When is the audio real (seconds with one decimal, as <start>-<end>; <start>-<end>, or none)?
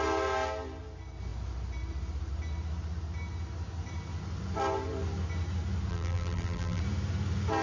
0.0-5.9; 6.8-7.6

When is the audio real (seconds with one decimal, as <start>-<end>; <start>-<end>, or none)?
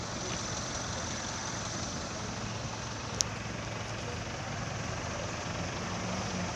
0.0-6.6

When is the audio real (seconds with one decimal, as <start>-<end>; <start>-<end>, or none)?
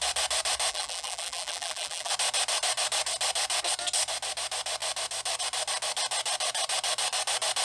0.0-0.7; 2.1-7.6